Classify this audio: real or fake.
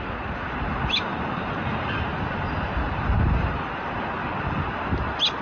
real